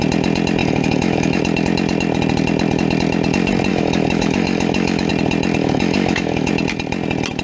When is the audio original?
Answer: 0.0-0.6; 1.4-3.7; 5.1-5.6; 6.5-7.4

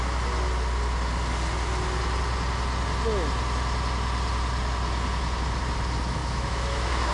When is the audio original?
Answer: 0.0-6.2

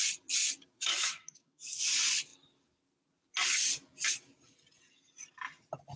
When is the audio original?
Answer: 0.0-0.9; 1.8-6.0

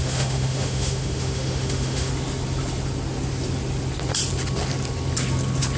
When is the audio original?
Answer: 2.1-5.8